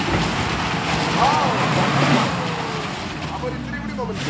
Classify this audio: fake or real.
real